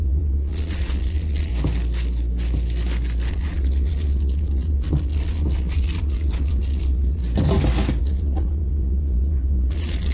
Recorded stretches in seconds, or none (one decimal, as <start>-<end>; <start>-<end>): 1.5-3.3; 7.2-8.0